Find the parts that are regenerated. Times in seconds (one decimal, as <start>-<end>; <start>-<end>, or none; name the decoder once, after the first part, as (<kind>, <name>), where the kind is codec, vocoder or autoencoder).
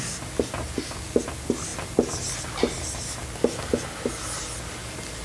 none